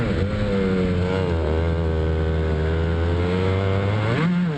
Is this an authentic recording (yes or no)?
yes